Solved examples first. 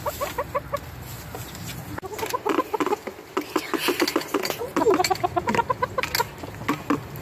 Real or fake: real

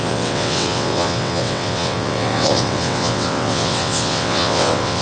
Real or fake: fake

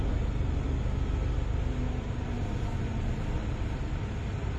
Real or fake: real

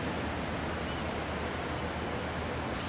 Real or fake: real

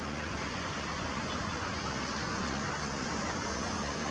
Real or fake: fake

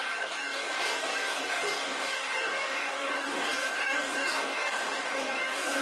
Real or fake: fake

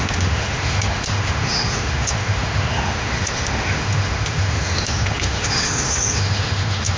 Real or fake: fake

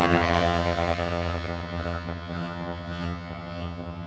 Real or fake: fake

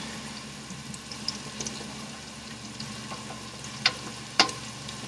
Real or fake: real